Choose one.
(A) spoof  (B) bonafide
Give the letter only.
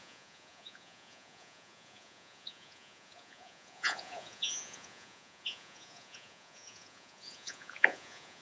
A